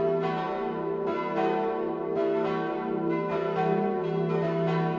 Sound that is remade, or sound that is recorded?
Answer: recorded